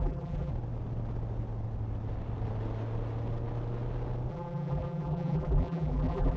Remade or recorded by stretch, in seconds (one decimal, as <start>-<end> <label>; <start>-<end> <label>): 0.0-0.5 remade; 0.5-4.3 recorded; 4.3-6.4 remade